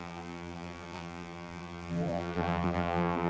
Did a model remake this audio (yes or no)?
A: yes